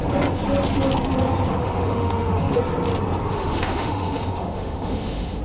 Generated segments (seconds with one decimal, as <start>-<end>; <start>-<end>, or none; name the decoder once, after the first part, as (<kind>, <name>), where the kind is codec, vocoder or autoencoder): 1.6-2.6 (autoencoder, DAC-VAE); 3.3-5.4

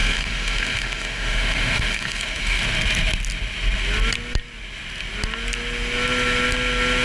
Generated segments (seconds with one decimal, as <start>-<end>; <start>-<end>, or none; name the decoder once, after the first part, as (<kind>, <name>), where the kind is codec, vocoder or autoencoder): 0.0-2.6 (autoencoder, DAC-VAE)